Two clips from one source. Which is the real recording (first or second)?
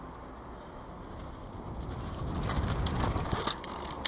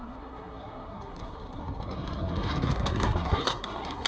first